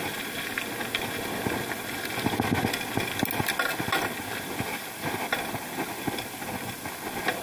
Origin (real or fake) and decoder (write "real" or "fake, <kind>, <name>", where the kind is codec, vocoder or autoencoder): real